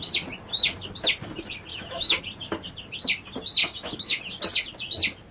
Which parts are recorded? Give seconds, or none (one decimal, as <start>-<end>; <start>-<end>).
0.0-1.7; 2.2-3.6; 4.2-5.3